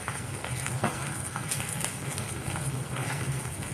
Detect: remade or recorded remade